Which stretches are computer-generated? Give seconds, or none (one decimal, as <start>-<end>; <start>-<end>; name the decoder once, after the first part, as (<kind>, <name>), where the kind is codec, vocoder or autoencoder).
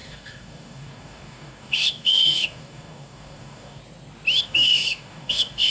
0.0-3.8 (codec, DAC); 4.4-5.7